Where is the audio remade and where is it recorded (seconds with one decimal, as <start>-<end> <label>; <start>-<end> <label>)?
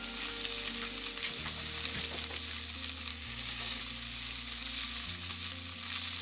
0.0-3.1 recorded; 3.1-3.8 remade; 3.8-6.2 recorded